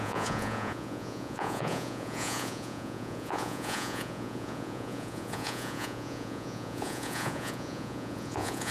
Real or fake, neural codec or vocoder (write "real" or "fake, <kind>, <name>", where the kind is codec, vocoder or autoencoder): fake, vocoder, Vocos